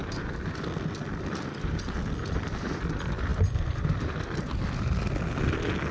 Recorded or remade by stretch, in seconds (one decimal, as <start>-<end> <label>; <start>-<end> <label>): 0.0-5.9 recorded